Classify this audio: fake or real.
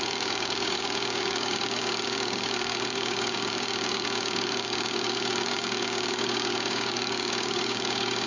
fake